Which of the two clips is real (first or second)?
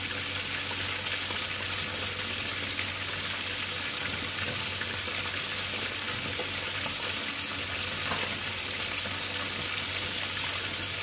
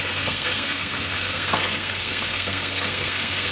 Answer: first